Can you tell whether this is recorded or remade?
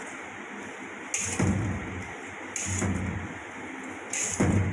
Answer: recorded